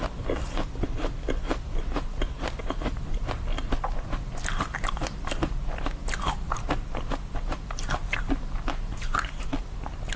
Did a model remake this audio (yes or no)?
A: no